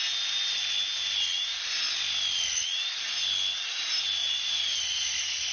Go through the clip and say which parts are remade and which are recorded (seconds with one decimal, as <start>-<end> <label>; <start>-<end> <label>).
0.0-4.2 recorded; 4.2-5.5 remade